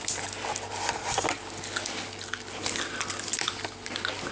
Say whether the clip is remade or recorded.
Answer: recorded